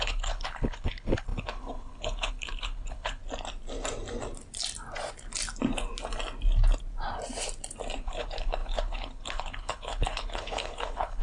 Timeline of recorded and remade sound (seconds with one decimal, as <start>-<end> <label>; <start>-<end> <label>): 0.0-3.2 remade; 3.2-8.0 recorded; 8.0-11.2 remade